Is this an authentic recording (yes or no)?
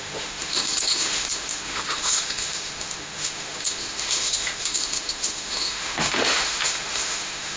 no